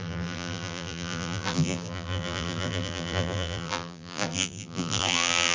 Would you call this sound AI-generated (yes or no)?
yes